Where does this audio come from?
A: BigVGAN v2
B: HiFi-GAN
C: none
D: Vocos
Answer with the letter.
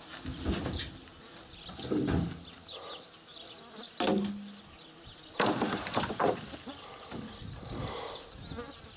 C